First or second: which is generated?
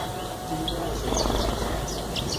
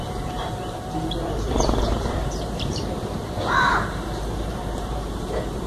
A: second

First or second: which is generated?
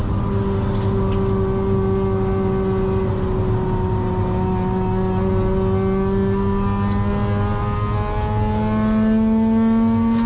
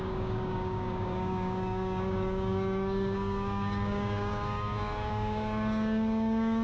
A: second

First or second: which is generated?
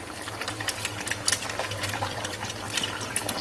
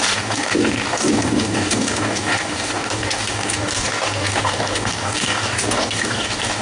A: second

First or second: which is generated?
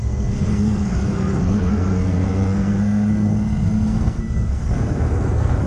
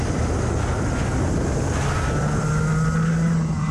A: first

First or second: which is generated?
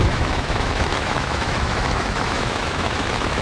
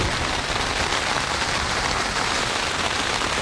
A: first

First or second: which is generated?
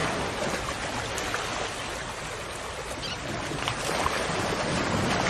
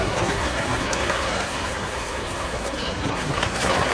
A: second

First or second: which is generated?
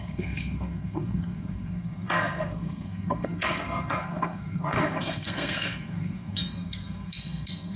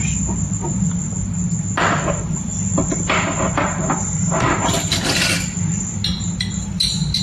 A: first